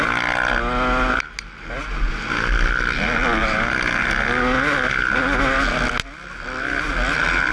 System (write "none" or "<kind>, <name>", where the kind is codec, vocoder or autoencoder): none